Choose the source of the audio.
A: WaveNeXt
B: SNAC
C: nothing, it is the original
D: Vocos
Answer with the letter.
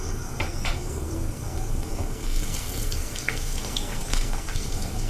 B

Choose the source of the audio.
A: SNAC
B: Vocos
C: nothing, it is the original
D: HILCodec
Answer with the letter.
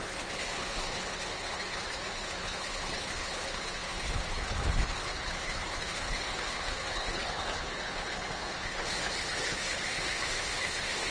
D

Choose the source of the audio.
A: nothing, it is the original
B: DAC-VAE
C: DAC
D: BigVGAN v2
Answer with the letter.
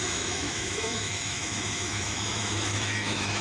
B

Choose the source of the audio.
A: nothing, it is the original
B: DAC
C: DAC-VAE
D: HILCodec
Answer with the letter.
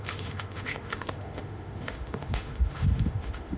C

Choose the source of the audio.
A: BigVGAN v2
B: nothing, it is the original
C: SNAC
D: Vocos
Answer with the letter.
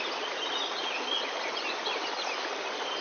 A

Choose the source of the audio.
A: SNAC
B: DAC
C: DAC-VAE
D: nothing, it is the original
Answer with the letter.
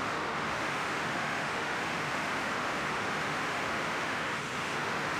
C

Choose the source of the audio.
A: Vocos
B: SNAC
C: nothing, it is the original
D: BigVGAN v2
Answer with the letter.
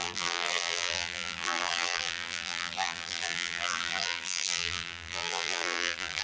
D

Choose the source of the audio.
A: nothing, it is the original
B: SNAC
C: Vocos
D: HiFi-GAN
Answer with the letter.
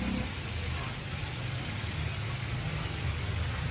A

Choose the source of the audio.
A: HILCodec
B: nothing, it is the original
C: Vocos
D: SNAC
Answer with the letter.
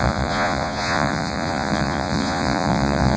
C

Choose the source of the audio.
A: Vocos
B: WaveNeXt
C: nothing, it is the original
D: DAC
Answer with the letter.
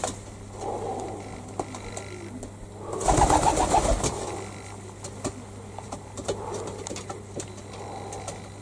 C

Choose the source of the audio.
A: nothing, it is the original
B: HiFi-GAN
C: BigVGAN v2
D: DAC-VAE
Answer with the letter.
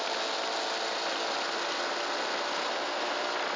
A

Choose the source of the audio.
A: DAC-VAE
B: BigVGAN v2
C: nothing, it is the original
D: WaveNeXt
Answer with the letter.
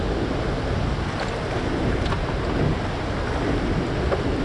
C